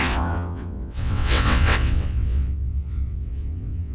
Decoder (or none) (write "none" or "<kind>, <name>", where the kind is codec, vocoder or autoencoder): vocoder, WaveNeXt